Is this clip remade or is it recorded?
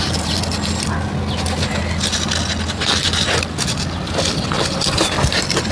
recorded